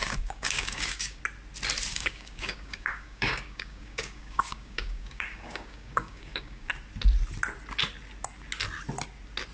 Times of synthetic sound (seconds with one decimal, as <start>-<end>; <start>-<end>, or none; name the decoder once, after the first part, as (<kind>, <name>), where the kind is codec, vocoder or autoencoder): 0.0-1.2 (codec, DAC); 1.9-6.7